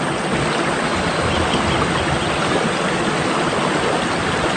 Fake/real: real